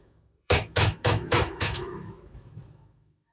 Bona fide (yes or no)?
no